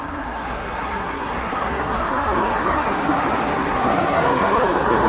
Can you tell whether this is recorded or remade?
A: remade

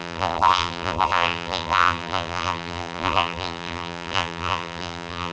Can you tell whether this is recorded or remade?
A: remade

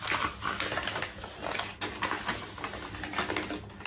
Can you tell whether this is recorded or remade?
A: recorded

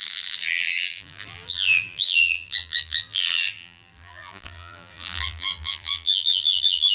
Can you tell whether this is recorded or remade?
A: remade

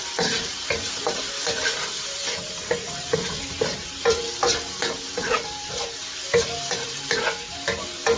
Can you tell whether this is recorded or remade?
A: remade